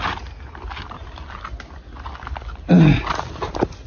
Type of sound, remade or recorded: recorded